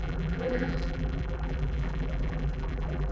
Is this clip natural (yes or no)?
no